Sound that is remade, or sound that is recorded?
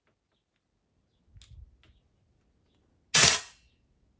recorded